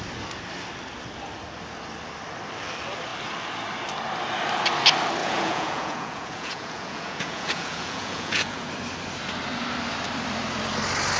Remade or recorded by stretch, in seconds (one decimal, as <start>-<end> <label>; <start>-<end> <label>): 0.0-5.2 recorded; 5.2-8.7 remade; 8.7-11.2 recorded